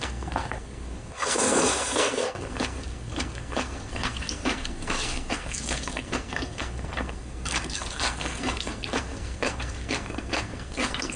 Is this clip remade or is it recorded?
remade